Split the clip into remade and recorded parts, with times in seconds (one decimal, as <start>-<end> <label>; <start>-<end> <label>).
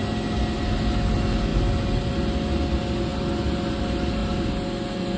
0.0-1.5 recorded; 1.5-2.1 remade; 2.1-5.2 recorded